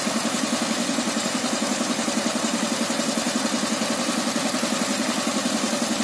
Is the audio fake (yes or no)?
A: no